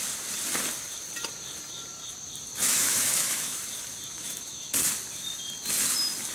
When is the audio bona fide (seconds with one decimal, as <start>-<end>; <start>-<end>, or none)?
0.0-2.6; 3.6-4.1; 4.7-6.3